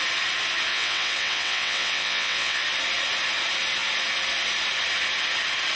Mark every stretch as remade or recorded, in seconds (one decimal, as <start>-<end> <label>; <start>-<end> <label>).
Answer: 0.0-0.7 recorded; 0.7-2.6 remade; 2.6-5.8 recorded